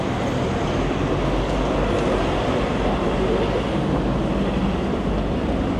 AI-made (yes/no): no